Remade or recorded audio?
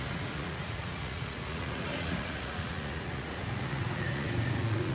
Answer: remade